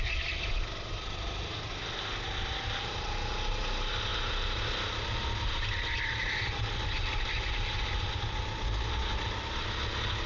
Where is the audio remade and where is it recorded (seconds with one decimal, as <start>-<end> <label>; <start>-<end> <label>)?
0.0-10.3 recorded